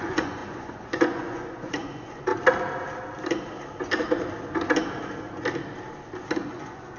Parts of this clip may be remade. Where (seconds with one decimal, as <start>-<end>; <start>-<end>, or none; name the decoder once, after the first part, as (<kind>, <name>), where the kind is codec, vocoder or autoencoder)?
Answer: 0.0-2.3 (vocoder, Vocos); 6.5-7.0